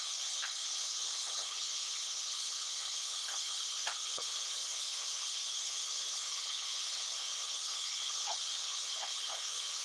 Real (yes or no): no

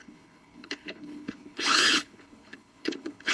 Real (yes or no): no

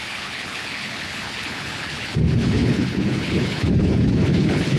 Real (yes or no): no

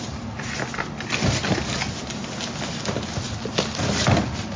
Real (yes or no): yes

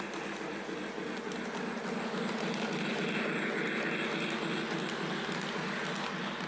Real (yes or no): yes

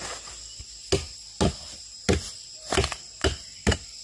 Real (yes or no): yes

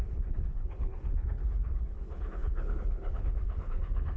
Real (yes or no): no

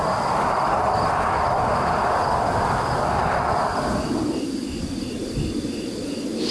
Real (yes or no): yes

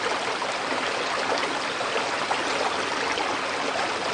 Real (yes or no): yes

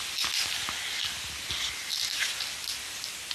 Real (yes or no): yes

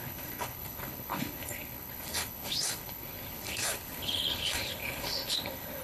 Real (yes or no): no